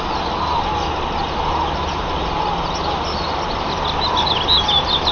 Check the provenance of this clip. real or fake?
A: real